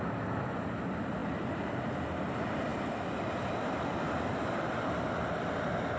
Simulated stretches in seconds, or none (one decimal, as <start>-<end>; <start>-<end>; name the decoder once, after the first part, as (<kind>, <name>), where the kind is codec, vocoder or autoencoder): 1.2-1.9 (vocoder, BigVGAN v2)